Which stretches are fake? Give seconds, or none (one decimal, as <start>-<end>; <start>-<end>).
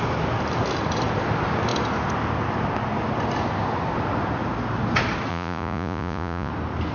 5.3-6.5